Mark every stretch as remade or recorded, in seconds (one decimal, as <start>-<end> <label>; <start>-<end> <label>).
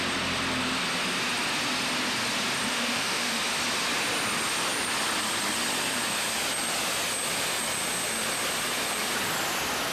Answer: 0.0-2.7 recorded; 2.7-3.4 remade; 3.4-9.9 recorded